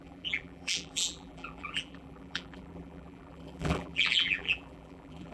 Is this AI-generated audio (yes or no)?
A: yes